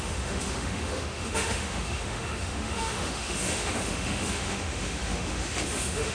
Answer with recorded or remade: remade